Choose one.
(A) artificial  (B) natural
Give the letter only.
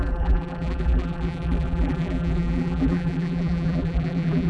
A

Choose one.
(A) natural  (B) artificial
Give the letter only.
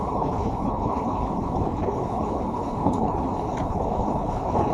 B